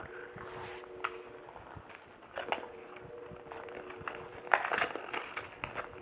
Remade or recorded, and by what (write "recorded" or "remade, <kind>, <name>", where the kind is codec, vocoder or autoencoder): recorded